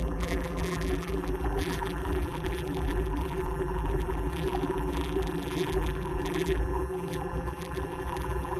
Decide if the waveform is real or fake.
fake